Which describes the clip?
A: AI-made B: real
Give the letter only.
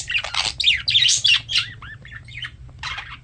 B